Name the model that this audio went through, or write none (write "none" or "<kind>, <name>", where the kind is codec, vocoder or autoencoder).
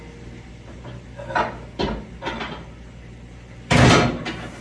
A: none